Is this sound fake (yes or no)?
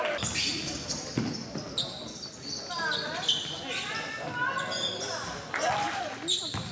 no